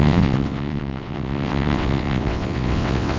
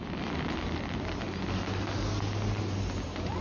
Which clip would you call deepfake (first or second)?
first